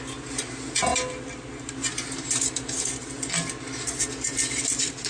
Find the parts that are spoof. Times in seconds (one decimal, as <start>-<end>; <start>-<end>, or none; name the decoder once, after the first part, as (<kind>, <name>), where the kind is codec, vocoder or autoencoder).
none